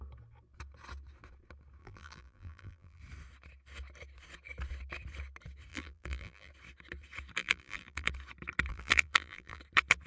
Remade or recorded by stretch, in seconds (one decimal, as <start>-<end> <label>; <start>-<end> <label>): 0.0-1.8 recorded; 1.8-3.0 remade; 3.0-5.7 recorded; 5.7-6.5 remade; 6.5-7.4 recorded; 7.4-8.1 remade; 8.1-8.7 recorded; 8.7-9.6 remade; 9.6-10.1 recorded